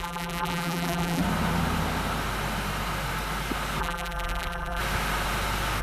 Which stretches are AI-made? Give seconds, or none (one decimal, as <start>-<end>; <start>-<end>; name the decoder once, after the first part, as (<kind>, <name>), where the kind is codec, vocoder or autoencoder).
0.0-1.2 (vocoder, BigVGAN v2); 3.8-4.8